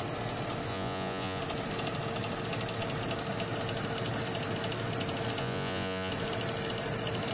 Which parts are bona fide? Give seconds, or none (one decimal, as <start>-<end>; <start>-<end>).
0.0-0.7; 1.4-5.4; 6.1-7.3